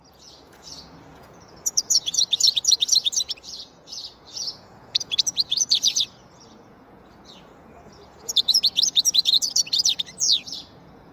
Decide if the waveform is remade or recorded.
remade